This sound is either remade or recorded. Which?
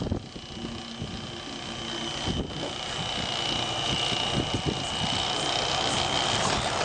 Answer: recorded